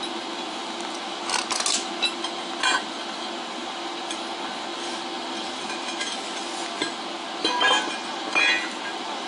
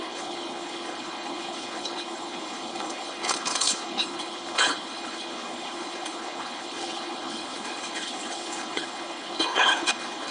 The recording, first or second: first